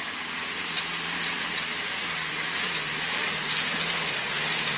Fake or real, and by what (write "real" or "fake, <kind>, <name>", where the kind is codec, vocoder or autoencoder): real